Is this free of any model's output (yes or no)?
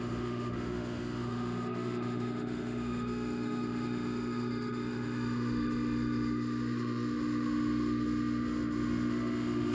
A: no